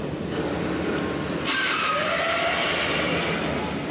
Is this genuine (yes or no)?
yes